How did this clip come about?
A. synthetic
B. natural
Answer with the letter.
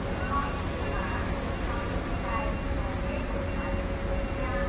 B